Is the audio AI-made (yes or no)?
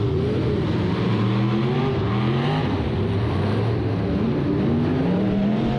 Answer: no